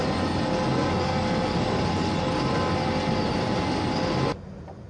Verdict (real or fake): real